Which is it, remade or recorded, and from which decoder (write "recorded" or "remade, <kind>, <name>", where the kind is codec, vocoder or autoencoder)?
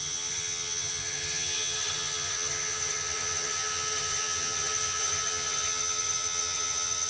remade, vocoder, HiFi-GAN